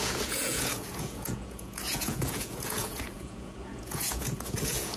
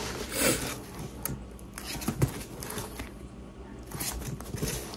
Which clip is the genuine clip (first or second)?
second